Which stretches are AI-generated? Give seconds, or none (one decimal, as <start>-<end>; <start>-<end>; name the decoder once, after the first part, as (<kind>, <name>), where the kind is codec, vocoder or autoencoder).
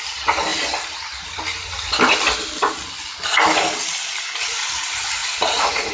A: 5.2-5.9 (vocoder, Vocos)